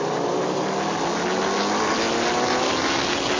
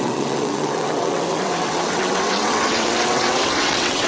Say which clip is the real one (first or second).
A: first